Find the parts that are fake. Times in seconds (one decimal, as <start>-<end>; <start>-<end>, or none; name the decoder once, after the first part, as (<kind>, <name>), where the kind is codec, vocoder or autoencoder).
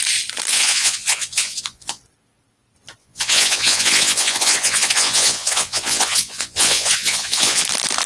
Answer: 0.5-2.0 (vocoder, Vocos); 3.0-7.6